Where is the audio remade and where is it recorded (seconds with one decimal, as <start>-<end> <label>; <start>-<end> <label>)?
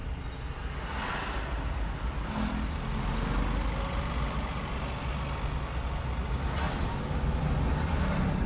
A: 0.0-8.5 recorded